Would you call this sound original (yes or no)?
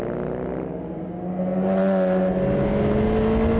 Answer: yes